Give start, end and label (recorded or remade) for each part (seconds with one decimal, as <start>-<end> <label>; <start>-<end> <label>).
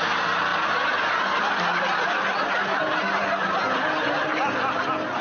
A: 0.0-5.2 recorded